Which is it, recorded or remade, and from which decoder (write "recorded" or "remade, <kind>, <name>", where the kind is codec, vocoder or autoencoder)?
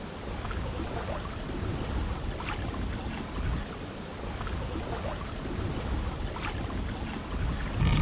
recorded